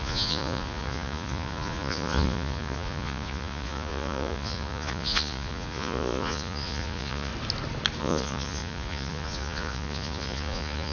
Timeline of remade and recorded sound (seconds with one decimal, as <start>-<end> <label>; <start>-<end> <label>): 0.0-7.3 remade; 7.3-8.0 recorded; 8.0-10.9 remade